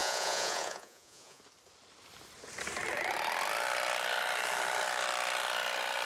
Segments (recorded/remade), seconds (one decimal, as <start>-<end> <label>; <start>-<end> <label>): 0.0-1.4 remade; 1.4-6.1 recorded

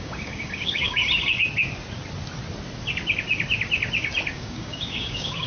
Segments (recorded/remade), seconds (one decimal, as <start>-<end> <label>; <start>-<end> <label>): 0.0-1.0 remade; 1.0-4.3 recorded; 4.3-5.5 remade